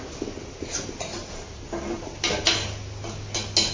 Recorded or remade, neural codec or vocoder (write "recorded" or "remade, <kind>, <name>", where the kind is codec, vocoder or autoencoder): recorded